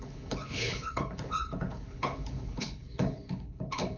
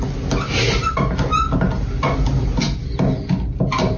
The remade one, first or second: first